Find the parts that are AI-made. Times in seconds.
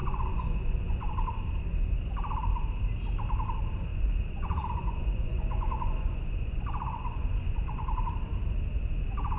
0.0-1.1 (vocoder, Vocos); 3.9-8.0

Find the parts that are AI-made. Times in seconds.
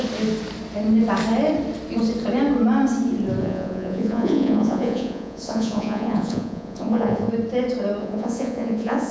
3.4-7.3 (vocoder, Vocos); 8.0-9.1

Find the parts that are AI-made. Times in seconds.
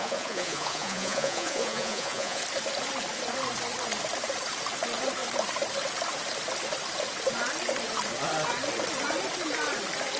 0.0-2.4 (vocoder, Vocos)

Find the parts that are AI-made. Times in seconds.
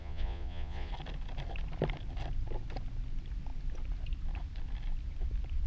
0.0-0.9 (vocoder, Vocos)